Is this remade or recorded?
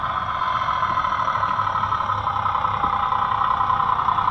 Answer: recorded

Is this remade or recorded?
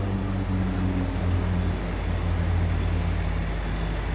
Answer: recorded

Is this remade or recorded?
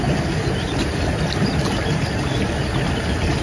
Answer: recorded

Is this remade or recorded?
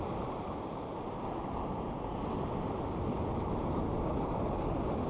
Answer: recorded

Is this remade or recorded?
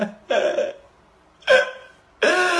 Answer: recorded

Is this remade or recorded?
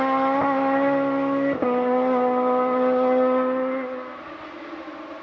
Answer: recorded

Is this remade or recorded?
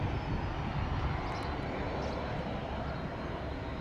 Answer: recorded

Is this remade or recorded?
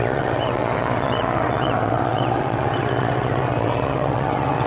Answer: remade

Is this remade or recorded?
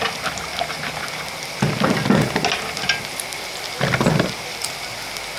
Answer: recorded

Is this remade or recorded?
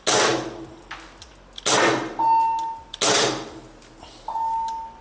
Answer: recorded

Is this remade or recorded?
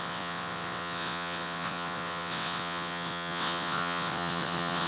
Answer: remade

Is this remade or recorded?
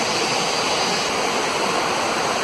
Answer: recorded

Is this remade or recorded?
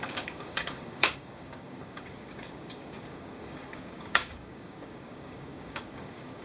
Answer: remade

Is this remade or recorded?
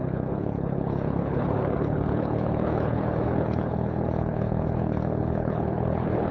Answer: remade